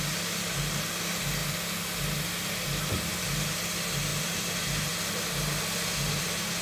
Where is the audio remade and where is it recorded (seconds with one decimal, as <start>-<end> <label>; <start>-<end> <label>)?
0.0-6.6 recorded